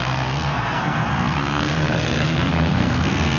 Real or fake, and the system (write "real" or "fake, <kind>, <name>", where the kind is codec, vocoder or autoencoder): fake, codec, SNAC